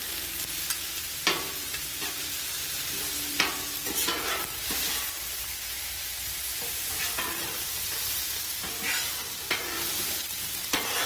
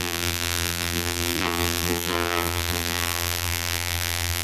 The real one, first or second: first